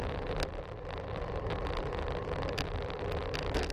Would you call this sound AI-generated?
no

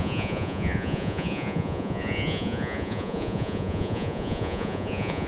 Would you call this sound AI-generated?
yes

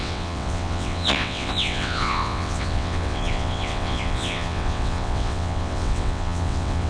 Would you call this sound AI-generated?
yes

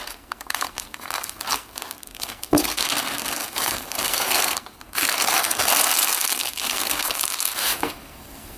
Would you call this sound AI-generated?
yes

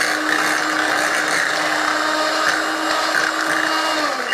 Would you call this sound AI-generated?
no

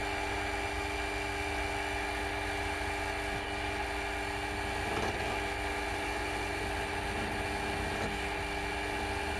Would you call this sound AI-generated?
no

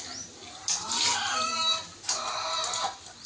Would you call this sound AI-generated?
no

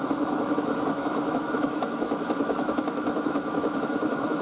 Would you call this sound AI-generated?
yes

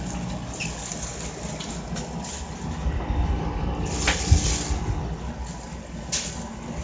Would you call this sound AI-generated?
no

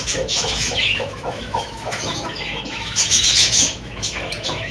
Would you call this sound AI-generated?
yes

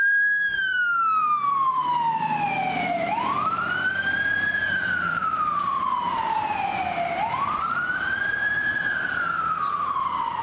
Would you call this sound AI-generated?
yes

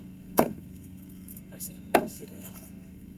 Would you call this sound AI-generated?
yes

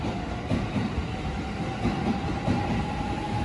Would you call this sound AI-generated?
no